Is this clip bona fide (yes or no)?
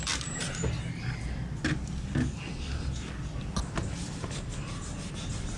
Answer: yes